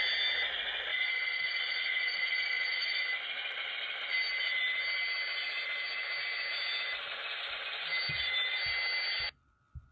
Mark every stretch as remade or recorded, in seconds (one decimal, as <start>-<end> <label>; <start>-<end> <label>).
0.0-0.9 recorded; 0.9-3.0 remade; 3.0-9.9 recorded